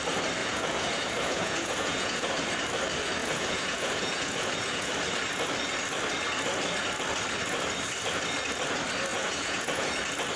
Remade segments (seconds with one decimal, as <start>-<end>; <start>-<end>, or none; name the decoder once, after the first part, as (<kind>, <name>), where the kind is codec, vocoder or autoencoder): 0.4-2.3 (vocoder, Vocos); 3.2-4.9; 9.1-9.9